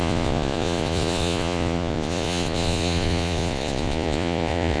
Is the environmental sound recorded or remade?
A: remade